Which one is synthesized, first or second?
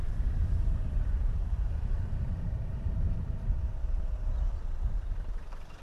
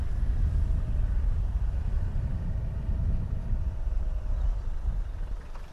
first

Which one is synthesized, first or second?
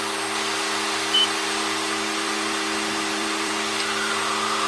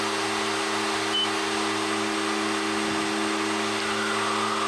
first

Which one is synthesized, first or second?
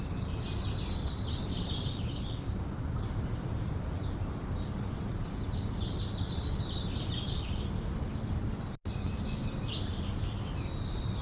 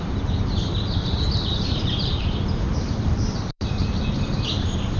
second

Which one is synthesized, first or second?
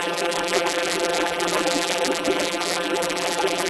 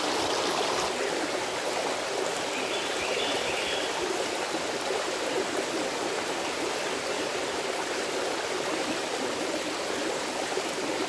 first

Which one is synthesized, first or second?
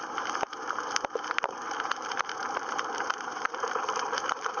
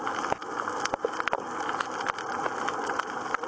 first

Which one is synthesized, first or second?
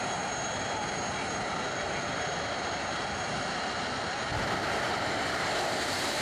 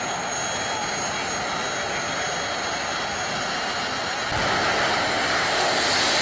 first